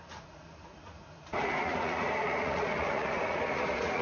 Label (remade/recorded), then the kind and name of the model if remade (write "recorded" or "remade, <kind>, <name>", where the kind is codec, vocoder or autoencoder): remade, vocoder, Vocos